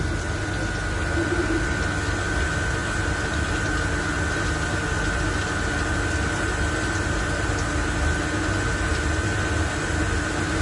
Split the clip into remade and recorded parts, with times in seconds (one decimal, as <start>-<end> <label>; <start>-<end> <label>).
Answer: 0.0-10.6 recorded